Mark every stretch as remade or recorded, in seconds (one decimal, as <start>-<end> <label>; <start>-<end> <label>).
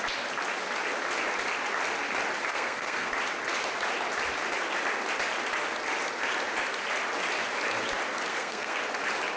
0.0-2.5 recorded; 2.5-3.1 remade; 3.1-8.3 recorded; 8.3-8.8 remade; 8.8-9.4 recorded